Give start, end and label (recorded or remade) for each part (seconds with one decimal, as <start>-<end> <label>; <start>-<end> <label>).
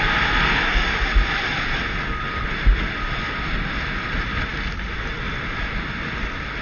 0.0-0.4 recorded; 0.4-1.1 remade; 1.1-6.6 recorded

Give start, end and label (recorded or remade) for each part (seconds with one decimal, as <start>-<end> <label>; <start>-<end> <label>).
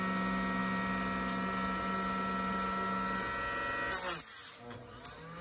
0.0-5.4 recorded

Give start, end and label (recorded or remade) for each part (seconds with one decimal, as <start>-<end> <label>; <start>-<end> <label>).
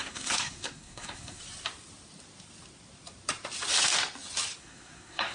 0.0-1.4 remade; 1.4-4.6 recorded; 4.6-5.3 remade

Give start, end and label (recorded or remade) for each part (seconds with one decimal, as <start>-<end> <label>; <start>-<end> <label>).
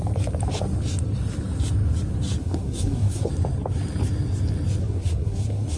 0.0-2.4 recorded; 2.4-3.3 remade; 3.3-4.8 recorded; 4.8-5.8 remade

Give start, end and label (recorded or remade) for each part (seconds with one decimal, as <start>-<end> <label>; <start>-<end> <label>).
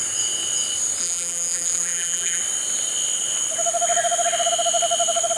0.0-1.0 recorded; 1.0-2.4 remade; 2.4-5.4 recorded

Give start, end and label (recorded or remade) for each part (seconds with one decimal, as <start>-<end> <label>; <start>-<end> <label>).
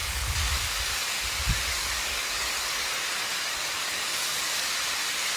0.0-1.0 remade; 1.0-1.5 recorded; 1.5-2.9 remade; 2.9-3.3 recorded; 3.3-4.7 remade; 4.7-5.4 recorded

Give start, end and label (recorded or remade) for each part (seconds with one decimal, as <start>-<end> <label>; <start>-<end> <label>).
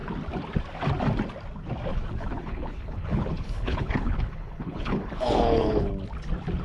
0.0-1.9 recorded; 1.9-5.9 remade; 5.9-6.6 recorded